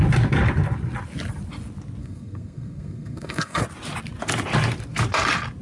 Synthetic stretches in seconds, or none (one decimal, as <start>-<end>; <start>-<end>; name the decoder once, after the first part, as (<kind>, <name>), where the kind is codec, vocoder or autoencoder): 2.0-3.6 (codec, SNAC)